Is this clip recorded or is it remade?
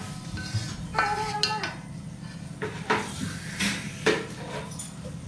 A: recorded